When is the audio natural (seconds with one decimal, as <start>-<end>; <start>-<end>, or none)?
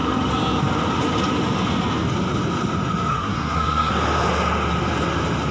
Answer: 0.0-3.1; 3.9-5.5